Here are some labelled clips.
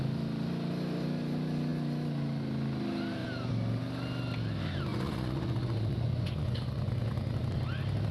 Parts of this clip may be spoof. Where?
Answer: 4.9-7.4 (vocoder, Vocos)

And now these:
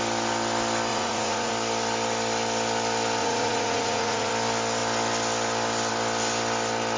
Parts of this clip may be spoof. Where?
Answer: 0.9-1.5 (vocoder, Vocos); 3.2-4.3